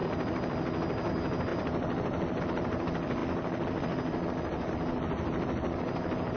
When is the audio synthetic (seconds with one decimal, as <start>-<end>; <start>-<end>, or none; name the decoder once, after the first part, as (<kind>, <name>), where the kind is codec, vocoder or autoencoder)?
none